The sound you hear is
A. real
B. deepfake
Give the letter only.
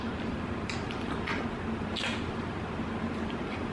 B